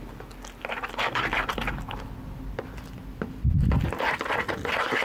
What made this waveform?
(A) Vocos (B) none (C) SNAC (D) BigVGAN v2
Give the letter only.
B